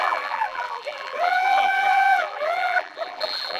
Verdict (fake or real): fake